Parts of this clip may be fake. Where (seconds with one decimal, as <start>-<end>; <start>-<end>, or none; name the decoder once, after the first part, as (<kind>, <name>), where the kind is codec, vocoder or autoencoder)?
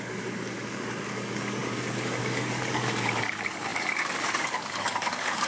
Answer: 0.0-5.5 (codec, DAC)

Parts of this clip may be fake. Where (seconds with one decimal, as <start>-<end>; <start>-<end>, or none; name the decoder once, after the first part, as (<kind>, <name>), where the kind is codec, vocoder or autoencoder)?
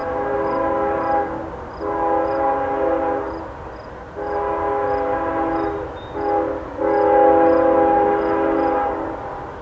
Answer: none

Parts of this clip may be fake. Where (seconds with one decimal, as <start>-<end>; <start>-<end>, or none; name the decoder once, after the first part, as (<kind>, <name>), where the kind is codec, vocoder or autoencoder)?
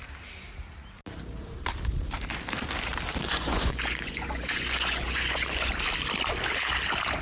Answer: 3.1-5.7 (vocoder, Vocos)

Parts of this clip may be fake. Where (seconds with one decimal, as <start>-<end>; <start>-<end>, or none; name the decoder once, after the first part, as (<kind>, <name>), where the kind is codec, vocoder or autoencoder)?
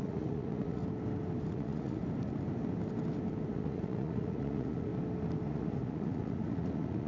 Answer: 0.0-0.8 (vocoder, Vocos); 1.5-2.0; 3.5-4.9; 5.5-7.1